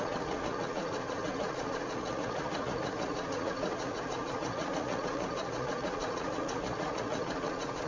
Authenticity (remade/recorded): remade